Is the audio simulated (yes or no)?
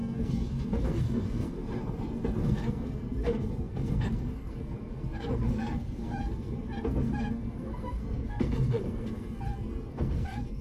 yes